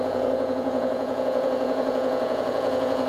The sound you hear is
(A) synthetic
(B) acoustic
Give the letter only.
A